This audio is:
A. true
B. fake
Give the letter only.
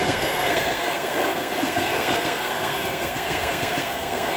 B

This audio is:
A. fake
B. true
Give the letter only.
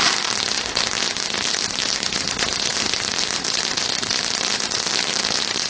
B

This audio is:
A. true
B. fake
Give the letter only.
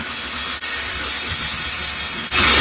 A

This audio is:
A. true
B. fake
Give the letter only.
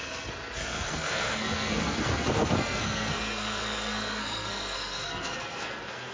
B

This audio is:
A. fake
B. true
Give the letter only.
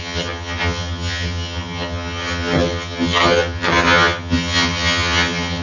A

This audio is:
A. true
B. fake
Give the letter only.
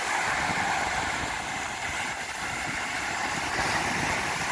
A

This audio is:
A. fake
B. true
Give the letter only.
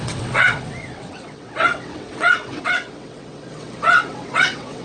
A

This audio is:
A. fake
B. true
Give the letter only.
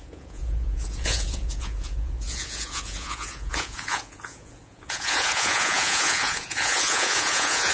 A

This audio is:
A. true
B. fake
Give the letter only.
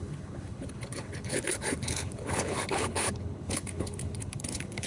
B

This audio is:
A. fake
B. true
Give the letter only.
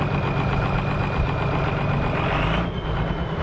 B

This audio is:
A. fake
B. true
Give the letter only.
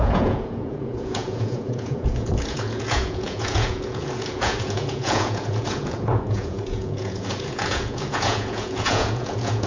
A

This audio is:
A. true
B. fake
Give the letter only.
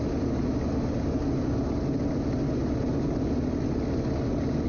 A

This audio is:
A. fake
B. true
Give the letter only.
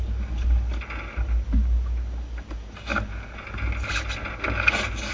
B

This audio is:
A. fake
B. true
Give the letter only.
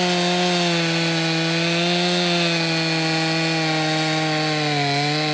B